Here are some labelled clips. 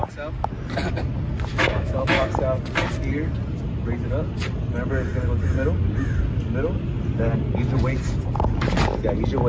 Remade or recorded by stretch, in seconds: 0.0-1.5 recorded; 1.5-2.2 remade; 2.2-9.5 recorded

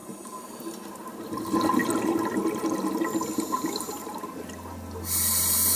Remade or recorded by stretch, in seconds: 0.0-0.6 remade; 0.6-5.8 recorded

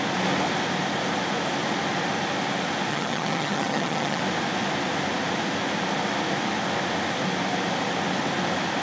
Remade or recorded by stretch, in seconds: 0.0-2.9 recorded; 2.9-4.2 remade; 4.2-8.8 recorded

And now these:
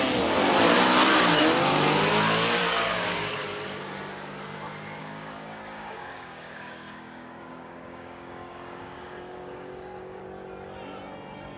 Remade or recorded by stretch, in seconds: 0.0-2.6 recorded; 2.6-3.3 remade; 3.3-5.0 recorded; 5.0-10.2 remade; 10.2-11.6 recorded

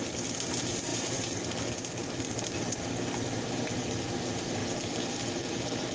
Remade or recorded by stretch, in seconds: 0.0-5.9 recorded

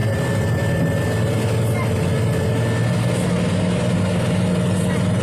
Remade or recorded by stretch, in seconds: 0.0-5.2 recorded